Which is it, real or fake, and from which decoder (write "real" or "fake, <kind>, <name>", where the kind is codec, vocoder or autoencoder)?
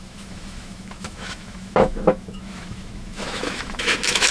fake, autoencoder, DAC-VAE